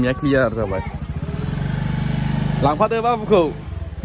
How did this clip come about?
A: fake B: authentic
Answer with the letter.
B